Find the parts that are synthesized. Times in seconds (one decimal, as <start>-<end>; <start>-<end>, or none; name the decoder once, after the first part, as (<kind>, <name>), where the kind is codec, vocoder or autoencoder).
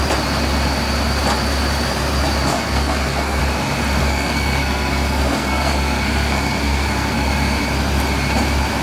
2.5-3.4 (codec, SNAC); 4.0-7.6